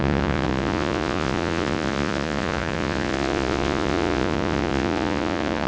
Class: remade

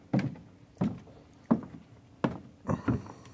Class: recorded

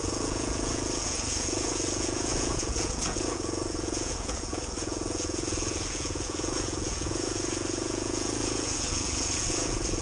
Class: remade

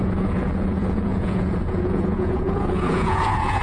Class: remade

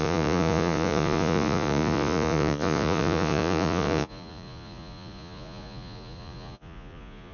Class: remade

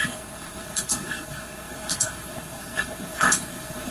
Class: remade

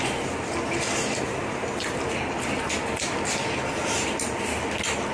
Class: recorded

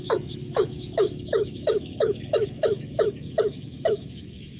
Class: remade